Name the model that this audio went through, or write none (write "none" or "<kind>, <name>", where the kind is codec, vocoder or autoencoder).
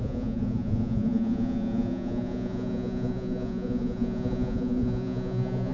vocoder, Vocos